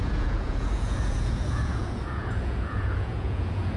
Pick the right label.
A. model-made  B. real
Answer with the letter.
A